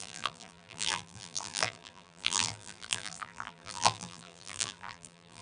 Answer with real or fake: fake